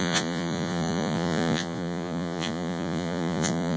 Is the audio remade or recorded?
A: remade